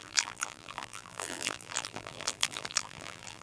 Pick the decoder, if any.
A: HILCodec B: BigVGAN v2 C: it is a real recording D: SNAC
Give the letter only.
B